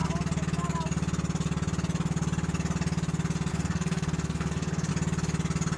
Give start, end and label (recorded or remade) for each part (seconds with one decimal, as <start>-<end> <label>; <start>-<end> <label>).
0.0-3.5 recorded; 3.5-4.9 remade; 4.9-5.8 recorded